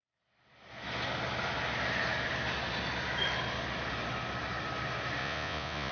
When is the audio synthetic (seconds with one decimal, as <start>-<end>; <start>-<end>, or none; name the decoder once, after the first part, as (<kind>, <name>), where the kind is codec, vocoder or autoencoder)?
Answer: 5.2-5.9 (vocoder, Vocos)